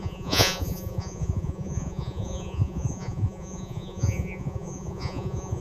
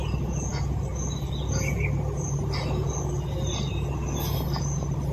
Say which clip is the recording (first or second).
second